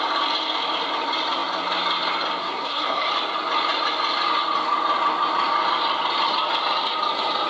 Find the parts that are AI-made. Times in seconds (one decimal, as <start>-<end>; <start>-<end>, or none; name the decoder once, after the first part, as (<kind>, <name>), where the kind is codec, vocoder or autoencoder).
2.4-3.1 (codec, SNAC)